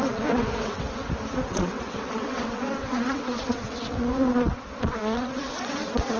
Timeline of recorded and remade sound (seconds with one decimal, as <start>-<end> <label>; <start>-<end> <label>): 0.0-1.0 remade; 1.0-1.5 recorded; 1.5-6.2 remade